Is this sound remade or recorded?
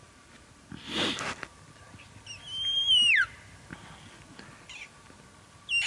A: recorded